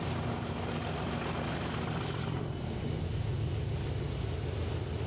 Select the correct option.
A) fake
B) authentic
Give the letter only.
B